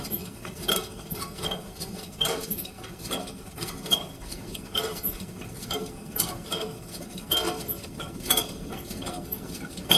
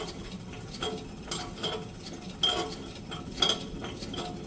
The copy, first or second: first